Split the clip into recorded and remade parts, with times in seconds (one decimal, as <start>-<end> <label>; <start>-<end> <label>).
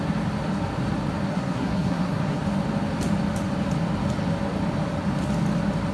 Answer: 0.0-1.3 recorded; 1.3-2.4 remade; 2.4-5.9 recorded